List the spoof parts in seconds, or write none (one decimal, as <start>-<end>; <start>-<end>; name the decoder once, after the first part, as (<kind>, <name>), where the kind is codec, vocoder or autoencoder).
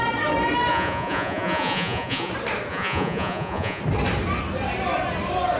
0.7-2.3 (vocoder, Vocos); 2.7-3.8